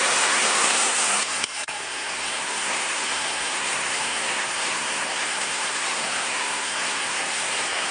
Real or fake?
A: fake